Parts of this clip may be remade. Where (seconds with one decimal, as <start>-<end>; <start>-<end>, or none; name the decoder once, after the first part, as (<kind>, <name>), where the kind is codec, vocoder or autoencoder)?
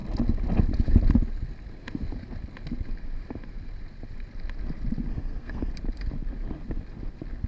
5.1-5.7 (codec, SNAC)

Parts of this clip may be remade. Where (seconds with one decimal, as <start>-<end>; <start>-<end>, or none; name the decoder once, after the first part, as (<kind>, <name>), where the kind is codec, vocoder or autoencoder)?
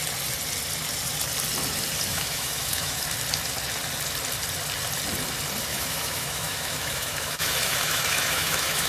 2.1-3.0 (autoencoder, DAC-VAE); 5.7-8.9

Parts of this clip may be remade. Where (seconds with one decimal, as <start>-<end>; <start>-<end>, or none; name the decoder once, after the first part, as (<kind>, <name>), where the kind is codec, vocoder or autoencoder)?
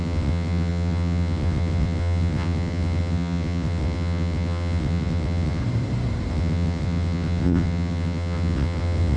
0.0-5.6 (vocoder, WaveNeXt); 6.3-9.2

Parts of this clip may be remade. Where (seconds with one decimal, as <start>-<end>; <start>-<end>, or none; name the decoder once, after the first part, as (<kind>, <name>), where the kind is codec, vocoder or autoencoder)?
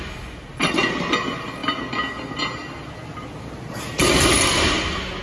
none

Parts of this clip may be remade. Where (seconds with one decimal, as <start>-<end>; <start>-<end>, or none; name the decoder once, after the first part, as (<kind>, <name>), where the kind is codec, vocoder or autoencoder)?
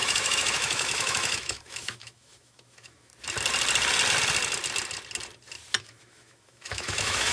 0.0-3.1 (autoencoder, DAC-VAE); 5.8-7.3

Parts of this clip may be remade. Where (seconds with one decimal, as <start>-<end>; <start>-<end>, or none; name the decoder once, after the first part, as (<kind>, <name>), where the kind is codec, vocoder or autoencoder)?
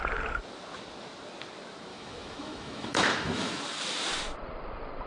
1.9-3.6 (autoencoder, DAC-VAE)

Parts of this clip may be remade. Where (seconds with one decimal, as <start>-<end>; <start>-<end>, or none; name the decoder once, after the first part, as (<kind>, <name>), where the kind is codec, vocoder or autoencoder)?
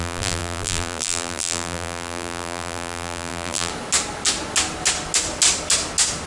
0.0-3.7 (vocoder, BigVGAN v2)